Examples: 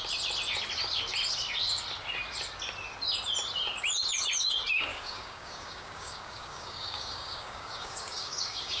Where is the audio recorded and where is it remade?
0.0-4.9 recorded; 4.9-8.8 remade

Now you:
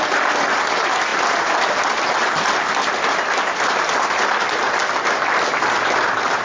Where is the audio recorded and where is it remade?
0.0-6.4 recorded

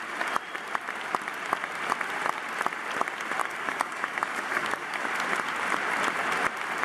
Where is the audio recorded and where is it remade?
0.0-3.4 recorded; 3.4-5.0 remade; 5.0-6.8 recorded

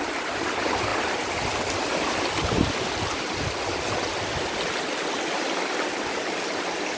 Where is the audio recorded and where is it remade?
0.0-7.0 recorded